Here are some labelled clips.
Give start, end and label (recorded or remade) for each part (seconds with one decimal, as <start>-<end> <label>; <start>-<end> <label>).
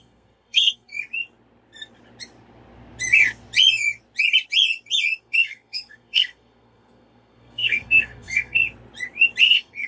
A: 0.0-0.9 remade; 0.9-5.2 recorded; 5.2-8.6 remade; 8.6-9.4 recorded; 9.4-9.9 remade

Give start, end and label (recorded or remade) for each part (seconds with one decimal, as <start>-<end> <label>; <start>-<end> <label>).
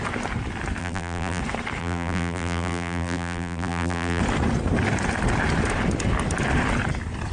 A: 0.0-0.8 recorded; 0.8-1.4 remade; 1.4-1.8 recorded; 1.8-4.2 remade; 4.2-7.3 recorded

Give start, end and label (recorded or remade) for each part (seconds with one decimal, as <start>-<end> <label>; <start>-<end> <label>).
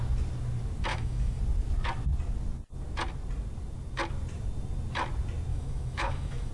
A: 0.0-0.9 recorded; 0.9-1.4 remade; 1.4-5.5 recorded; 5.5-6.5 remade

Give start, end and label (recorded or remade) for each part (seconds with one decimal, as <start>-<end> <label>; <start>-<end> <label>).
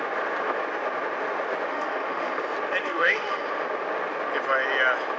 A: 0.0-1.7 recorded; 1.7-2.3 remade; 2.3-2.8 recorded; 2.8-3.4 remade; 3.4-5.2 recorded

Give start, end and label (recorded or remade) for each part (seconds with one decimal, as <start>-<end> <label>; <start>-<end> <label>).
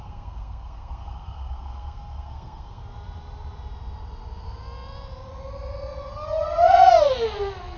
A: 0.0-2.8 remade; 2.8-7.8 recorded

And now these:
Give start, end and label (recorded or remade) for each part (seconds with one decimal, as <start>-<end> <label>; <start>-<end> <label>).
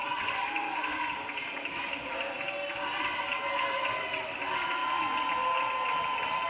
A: 0.0-1.1 remade; 1.1-6.5 recorded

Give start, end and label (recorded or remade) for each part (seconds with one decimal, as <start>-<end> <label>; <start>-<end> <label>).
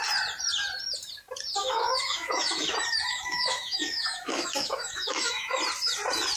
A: 0.0-1.6 recorded; 1.6-2.7 remade; 2.7-3.1 recorded; 3.1-5.6 remade; 5.6-6.4 recorded